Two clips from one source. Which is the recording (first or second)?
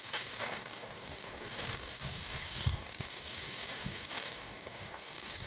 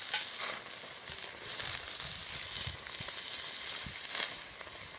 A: second